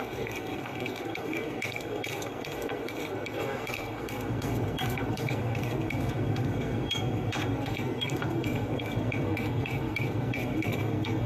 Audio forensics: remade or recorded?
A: remade